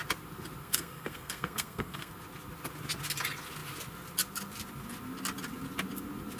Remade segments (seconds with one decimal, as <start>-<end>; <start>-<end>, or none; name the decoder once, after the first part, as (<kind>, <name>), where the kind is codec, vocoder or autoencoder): 0.6-2.1 (codec, SNAC)